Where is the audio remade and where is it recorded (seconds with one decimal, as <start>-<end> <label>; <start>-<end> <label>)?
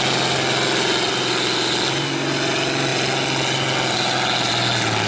0.0-5.1 recorded